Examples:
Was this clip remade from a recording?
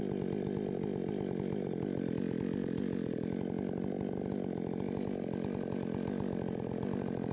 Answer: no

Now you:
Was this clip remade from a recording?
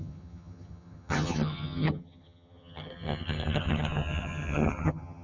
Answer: yes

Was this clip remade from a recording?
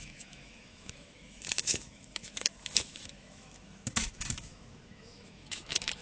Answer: yes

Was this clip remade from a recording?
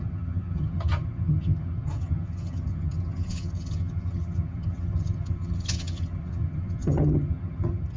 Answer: yes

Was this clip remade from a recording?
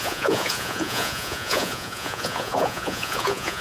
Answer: yes